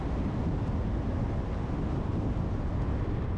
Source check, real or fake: real